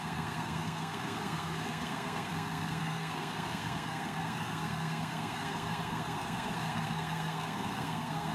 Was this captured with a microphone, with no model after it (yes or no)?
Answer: no